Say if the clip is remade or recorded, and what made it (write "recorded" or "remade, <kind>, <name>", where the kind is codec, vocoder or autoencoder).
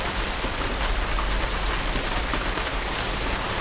recorded